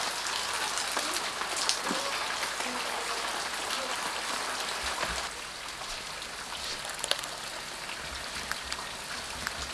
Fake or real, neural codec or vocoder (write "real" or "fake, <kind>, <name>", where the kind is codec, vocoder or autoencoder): real